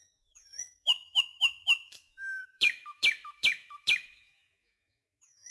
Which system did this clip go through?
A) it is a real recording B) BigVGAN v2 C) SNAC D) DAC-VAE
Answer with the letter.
D